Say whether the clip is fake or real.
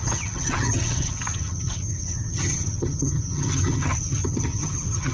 fake